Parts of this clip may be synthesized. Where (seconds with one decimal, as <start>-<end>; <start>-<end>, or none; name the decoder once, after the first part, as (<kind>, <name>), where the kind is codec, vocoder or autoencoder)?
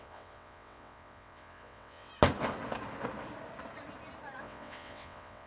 0.0-2.1 (vocoder, WaveNeXt); 4.4-5.5